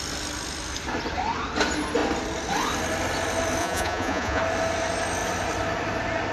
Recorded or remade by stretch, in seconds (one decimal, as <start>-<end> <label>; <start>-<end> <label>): 0.0-3.6 recorded; 3.6-4.4 remade; 4.4-6.3 recorded